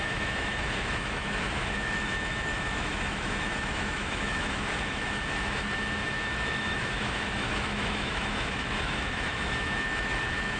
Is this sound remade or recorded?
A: remade